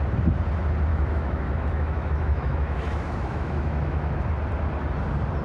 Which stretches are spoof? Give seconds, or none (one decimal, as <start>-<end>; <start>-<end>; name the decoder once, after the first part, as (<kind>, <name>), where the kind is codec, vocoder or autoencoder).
0.9-4.1 (autoencoder, DAC-VAE)